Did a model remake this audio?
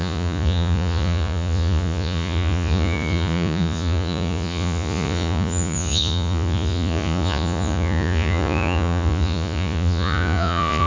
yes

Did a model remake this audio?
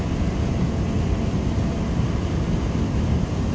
no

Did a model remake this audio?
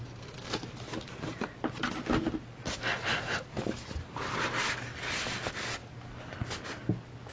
no